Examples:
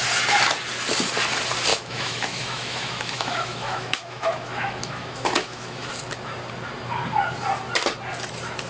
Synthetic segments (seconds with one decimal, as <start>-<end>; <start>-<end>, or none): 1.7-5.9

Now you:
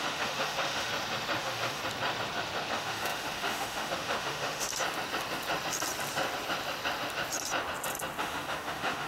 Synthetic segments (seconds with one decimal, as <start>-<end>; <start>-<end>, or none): 0.0-0.9; 1.4-1.8; 2.7-4.7; 8.2-9.1

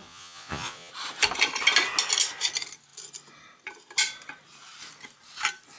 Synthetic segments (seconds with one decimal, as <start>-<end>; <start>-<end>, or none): 0.0-0.9

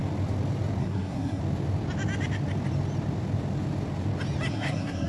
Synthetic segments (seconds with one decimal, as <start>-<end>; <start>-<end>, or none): 0.8-1.4; 4.5-5.1